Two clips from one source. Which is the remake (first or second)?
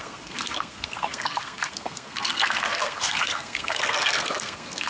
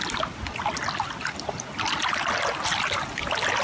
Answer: first